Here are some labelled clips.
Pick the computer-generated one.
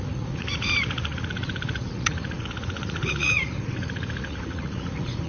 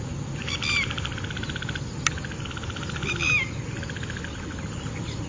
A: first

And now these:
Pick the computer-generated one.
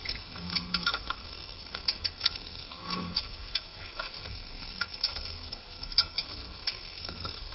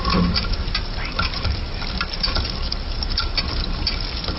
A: first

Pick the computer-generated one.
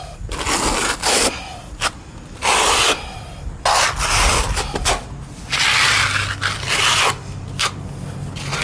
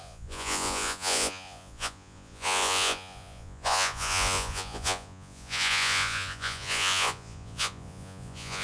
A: second